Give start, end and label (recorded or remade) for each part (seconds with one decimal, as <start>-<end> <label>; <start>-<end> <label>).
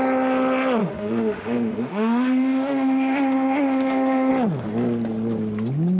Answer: 0.0-0.8 recorded; 0.8-4.3 remade; 4.3-6.0 recorded